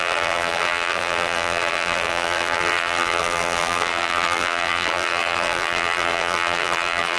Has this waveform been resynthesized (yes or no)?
yes